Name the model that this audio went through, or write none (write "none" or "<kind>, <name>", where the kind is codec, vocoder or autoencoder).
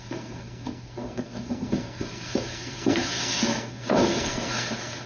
codec, SNAC